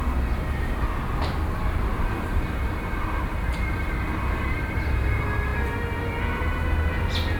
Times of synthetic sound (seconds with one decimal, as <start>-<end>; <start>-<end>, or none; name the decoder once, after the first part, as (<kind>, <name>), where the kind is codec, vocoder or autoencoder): 1.9-4.9 (vocoder, BigVGAN v2)